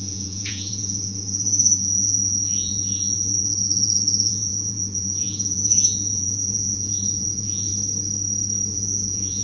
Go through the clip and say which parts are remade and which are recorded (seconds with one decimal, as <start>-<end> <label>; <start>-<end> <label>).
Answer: 0.0-7.7 remade; 7.7-8.7 recorded; 8.7-9.4 remade